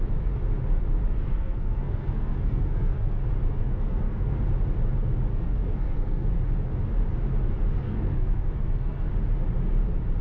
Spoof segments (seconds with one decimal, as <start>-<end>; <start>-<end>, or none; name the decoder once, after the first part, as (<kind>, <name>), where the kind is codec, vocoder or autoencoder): 1.3-3.2 (codec, SNAC); 3.6-4.4; 5.3-6.3; 7.8-9.1